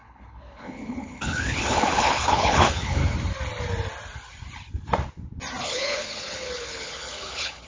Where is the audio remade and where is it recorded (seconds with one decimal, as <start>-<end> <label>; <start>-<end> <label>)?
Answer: 0.0-3.0 remade; 3.0-5.6 recorded; 5.6-7.7 remade